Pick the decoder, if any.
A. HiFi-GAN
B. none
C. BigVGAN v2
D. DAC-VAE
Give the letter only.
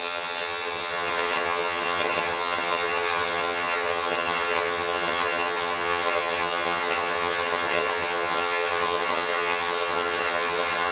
A